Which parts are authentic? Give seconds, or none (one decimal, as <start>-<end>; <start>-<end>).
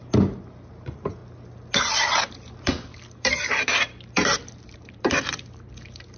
0.0-0.7; 1.2-2.3